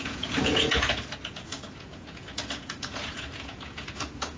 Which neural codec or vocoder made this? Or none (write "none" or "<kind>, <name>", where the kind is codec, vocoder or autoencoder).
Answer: vocoder, Vocos